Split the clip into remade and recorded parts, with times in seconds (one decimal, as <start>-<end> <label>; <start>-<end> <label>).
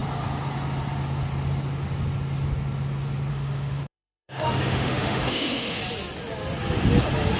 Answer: 0.0-3.3 recorded; 3.3-5.8 remade; 5.8-7.4 recorded